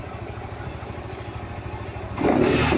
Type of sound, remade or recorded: recorded